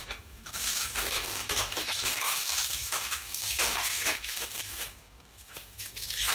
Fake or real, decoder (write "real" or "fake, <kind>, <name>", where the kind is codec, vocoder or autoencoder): fake, codec, DAC